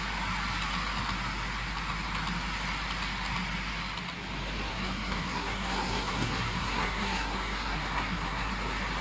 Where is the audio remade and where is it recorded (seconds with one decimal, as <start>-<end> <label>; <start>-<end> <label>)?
0.0-4.7 recorded; 4.7-8.5 remade; 8.5-9.0 recorded